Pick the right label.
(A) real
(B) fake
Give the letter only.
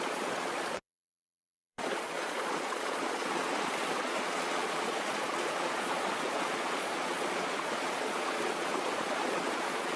B